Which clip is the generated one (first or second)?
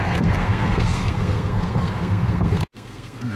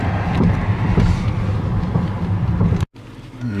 first